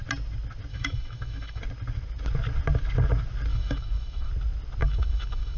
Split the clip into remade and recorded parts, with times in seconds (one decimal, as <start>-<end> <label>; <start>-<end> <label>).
0.0-0.7 recorded; 0.7-1.6 remade; 1.6-3.5 recorded; 3.5-4.3 remade; 4.3-4.8 recorded; 4.8-5.6 remade